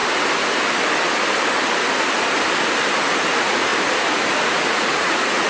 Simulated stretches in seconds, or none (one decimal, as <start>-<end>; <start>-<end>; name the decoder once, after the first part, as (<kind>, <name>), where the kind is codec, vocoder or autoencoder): 3.3-3.7 (vocoder, Vocos); 4.5-5.5